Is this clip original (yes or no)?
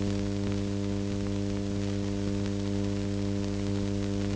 yes